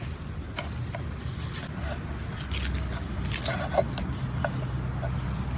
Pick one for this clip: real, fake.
real